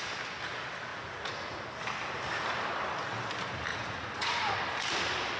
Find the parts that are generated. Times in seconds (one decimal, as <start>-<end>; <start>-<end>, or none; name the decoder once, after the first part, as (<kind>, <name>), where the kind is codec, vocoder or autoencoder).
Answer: 0.9-1.6 (vocoder, Vocos); 3.7-4.5